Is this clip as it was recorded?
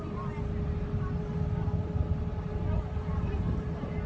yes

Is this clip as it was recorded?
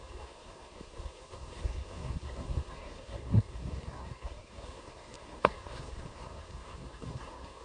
no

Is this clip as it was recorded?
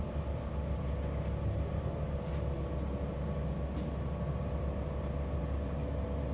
yes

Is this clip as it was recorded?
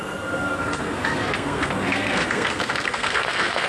no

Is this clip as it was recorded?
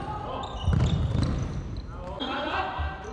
yes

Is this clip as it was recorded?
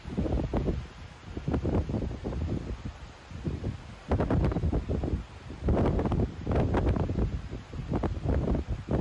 yes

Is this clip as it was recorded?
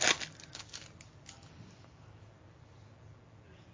yes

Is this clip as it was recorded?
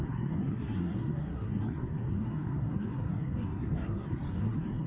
no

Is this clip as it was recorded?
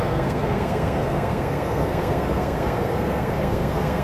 no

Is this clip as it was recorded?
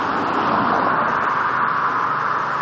yes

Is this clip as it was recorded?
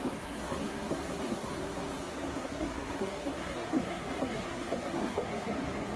no